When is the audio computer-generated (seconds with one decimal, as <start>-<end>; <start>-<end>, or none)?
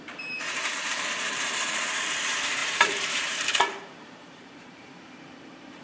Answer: 0.0-5.8